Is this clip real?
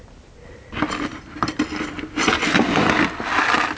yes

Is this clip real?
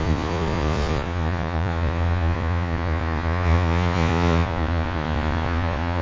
no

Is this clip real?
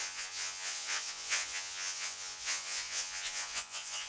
no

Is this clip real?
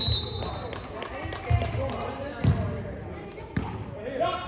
yes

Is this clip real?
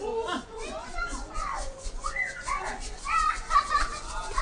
no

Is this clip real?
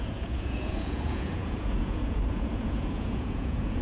no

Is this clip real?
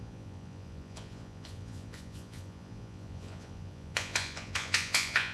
no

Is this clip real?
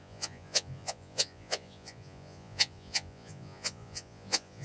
no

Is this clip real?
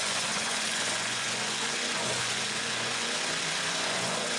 no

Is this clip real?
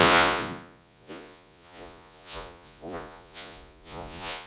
no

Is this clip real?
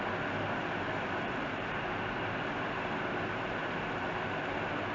yes